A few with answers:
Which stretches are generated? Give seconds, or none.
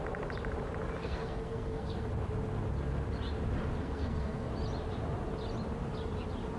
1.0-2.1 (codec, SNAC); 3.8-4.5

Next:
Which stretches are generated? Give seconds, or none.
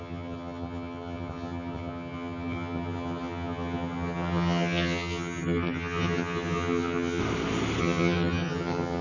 0.0-7.2 (vocoder, HiFi-GAN); 7.8-9.0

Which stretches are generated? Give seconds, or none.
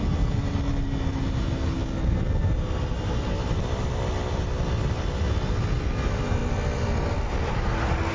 none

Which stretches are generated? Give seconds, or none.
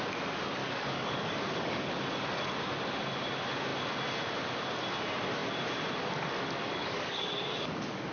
0.6-1.9 (codec, DAC); 6.7-8.1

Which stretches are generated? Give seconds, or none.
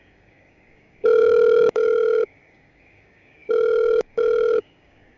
0.0-5.2 (codec, DAC)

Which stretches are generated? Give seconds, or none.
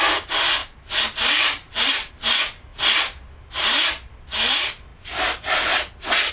0.6-2.1 (vocoder, BigVGAN v2)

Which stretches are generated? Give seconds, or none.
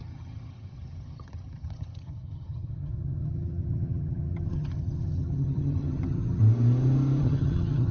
0.0-6.4 (vocoder, HiFi-GAN); 7.2-7.9